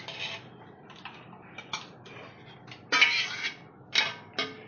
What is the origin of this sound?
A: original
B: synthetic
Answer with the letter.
A